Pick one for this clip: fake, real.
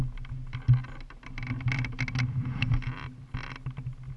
real